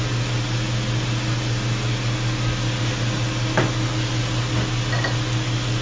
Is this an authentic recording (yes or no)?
yes